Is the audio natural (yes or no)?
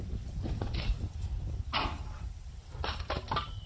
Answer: yes